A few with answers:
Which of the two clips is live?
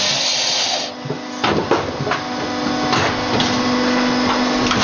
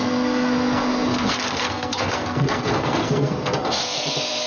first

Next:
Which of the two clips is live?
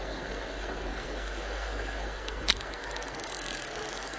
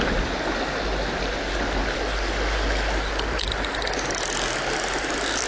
second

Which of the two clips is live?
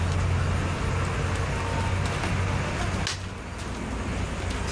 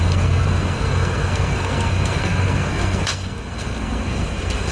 first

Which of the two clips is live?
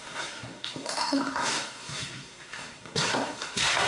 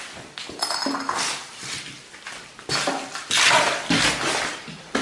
second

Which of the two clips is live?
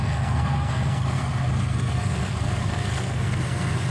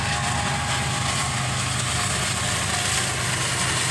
second